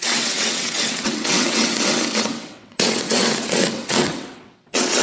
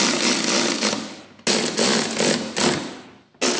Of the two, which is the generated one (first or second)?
first